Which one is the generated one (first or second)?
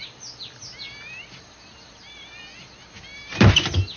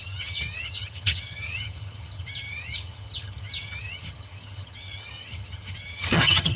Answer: second